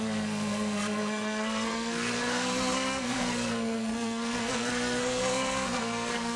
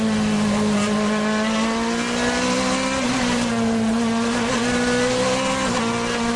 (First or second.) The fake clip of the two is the first